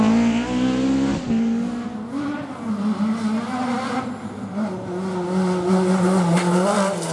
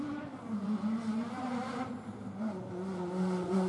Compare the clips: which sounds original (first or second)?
first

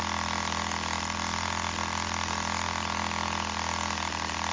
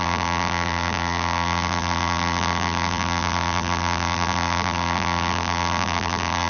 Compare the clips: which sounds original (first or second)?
first